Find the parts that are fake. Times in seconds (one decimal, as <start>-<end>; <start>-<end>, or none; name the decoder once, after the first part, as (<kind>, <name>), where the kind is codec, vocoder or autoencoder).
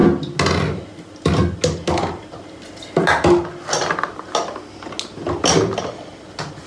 none